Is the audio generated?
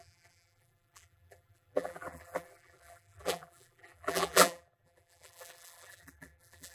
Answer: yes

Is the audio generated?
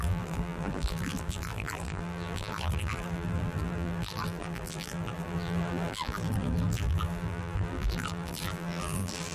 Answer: yes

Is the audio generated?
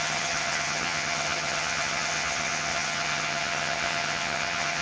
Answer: yes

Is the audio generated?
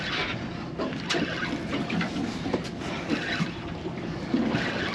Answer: no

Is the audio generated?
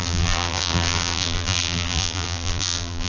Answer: yes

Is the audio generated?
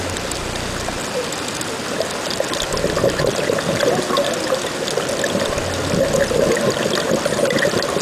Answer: no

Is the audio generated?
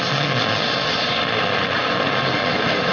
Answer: no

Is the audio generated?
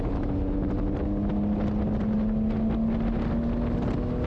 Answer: no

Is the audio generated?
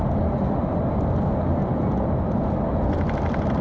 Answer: no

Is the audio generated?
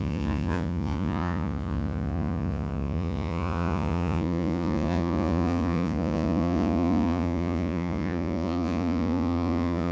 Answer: yes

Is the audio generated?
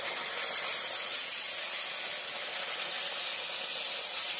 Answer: no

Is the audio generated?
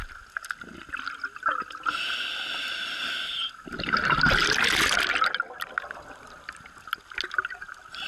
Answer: no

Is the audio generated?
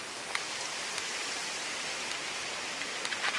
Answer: yes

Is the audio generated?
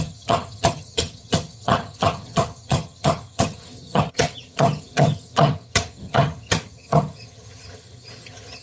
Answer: yes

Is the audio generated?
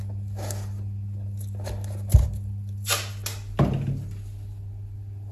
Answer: no